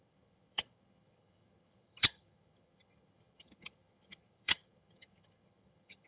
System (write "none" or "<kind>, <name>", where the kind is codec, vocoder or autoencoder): vocoder, HiFi-GAN